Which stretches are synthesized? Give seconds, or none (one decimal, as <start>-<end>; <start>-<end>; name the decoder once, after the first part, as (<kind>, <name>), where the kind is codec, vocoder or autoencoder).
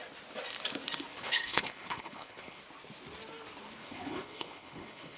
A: 1.1-2.6 (codec, HILCodec); 3.8-5.2